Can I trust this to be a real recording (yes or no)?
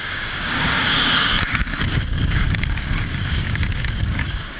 no